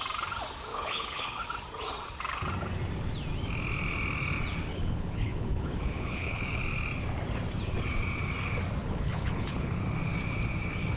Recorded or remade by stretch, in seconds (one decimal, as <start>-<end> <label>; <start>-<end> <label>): 0.0-0.7 recorded; 0.7-1.4 remade; 1.4-4.7 recorded; 4.7-6.6 remade; 6.6-8.8 recorded; 8.8-9.8 remade; 9.8-11.0 recorded